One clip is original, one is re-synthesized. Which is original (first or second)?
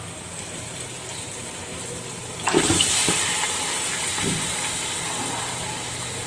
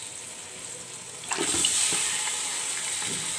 second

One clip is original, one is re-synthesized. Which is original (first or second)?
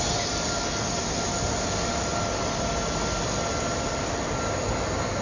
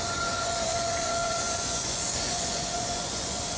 first